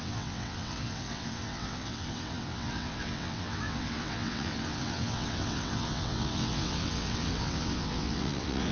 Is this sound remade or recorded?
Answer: remade